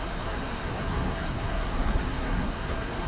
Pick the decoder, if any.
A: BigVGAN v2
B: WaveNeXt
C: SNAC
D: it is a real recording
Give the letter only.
C